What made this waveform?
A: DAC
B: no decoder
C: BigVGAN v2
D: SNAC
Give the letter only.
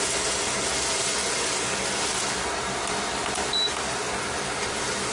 B